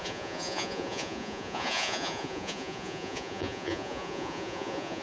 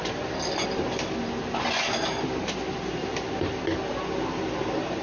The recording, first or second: second